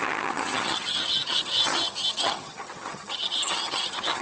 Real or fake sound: fake